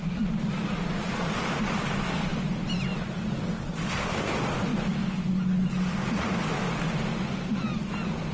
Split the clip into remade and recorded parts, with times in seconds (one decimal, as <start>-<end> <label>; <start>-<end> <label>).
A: 0.0-8.3 recorded

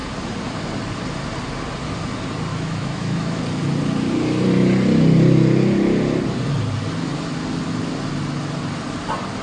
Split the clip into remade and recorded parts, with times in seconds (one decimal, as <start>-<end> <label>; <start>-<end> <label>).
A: 0.0-2.5 recorded; 2.5-3.4 remade; 3.4-9.4 recorded

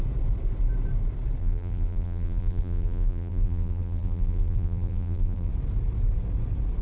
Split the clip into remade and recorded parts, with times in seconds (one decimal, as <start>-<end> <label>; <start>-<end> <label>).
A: 0.0-1.4 recorded; 1.4-5.5 remade; 5.5-6.8 recorded

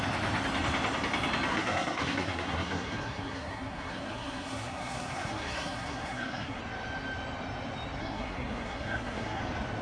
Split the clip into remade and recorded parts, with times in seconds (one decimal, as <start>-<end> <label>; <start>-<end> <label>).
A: 0.0-1.5 recorded; 1.5-6.6 remade; 6.6-8.0 recorded; 8.0-9.4 remade; 9.4-9.8 recorded

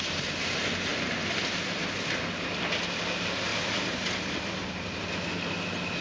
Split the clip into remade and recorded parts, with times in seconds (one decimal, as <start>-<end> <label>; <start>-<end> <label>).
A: 0.0-0.9 recorded; 0.9-1.9 remade; 1.9-3.5 recorded; 3.5-4.6 remade; 4.6-6.0 recorded